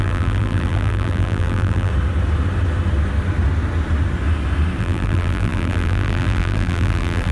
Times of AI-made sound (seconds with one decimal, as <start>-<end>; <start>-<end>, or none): 0.0-1.9; 4.8-7.3